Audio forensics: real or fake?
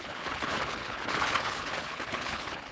fake